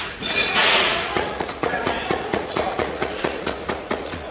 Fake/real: fake